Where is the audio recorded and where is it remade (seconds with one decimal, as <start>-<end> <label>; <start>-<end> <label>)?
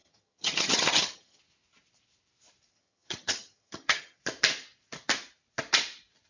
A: 0.0-1.4 remade; 1.4-2.7 recorded; 2.7-4.2 remade; 4.2-6.3 recorded